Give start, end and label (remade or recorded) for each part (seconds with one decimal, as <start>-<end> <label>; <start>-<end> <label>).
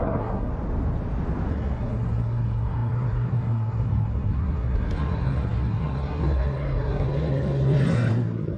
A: 0.0-0.5 remade; 0.5-1.5 recorded; 1.5-8.6 remade